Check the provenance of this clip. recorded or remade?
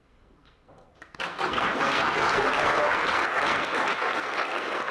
remade